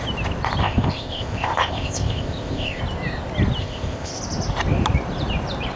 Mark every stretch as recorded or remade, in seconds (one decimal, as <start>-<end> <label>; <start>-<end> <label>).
0.0-0.6 recorded; 0.6-2.8 remade; 2.8-3.6 recorded; 3.6-4.2 remade; 4.2-5.8 recorded